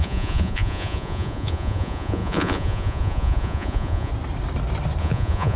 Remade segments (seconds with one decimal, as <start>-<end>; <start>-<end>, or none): 0.0-4.1; 5.0-5.6